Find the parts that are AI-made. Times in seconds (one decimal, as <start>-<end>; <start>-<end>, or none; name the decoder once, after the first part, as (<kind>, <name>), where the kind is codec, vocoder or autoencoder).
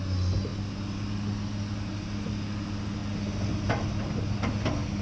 none